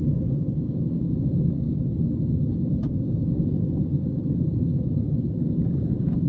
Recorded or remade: remade